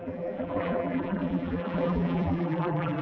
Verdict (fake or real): fake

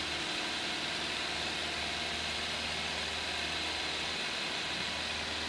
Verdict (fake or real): real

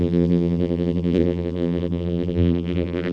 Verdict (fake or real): fake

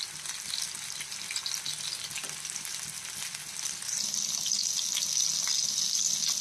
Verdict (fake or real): real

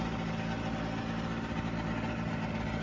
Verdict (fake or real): real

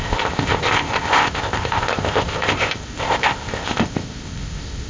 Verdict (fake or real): fake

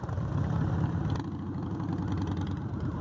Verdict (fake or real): fake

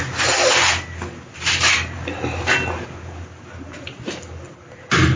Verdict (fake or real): real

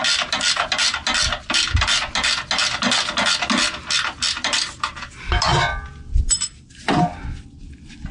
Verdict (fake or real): real